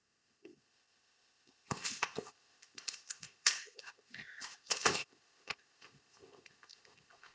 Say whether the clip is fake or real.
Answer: fake